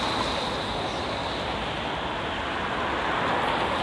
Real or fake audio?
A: real